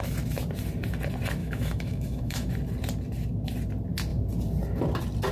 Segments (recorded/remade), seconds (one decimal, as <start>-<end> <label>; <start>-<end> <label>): 0.0-1.4 recorded; 1.4-2.5 remade; 2.5-5.3 recorded